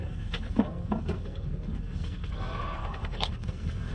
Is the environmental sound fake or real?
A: fake